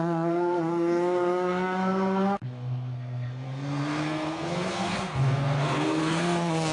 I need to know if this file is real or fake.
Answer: fake